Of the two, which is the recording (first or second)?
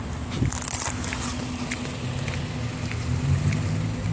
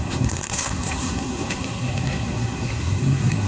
first